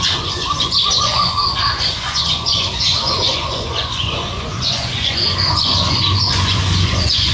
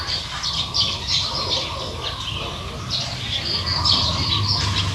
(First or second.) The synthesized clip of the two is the first